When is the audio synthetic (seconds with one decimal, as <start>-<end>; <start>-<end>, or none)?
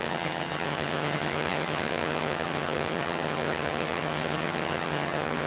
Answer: 0.0-5.5